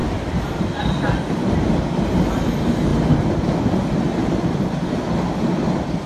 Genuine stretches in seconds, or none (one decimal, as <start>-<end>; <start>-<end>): 0.0-6.1